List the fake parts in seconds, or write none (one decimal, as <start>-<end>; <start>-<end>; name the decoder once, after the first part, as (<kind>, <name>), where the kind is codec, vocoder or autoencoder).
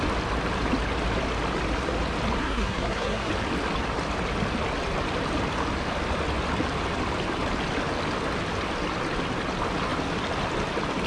2.4-3.3 (codec, SNAC)